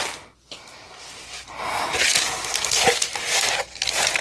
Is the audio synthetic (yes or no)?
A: no